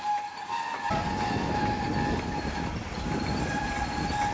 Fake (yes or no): yes